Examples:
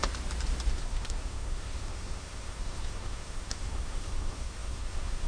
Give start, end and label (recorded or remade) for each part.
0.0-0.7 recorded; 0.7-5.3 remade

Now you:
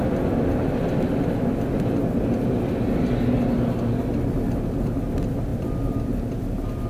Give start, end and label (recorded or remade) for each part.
0.0-6.9 recorded

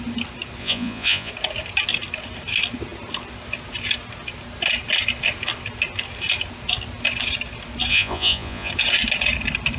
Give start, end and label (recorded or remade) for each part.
0.0-0.6 recorded; 0.6-1.3 remade; 1.3-7.9 recorded; 7.9-8.7 remade; 8.7-9.8 recorded

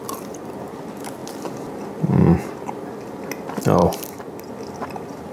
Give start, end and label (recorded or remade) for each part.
0.0-5.3 recorded